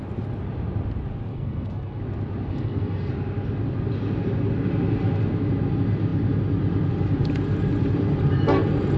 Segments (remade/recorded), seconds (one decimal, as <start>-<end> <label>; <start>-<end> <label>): 0.0-1.3 recorded; 1.3-2.0 remade; 2.0-2.5 recorded; 2.5-3.1 remade; 3.1-9.0 recorded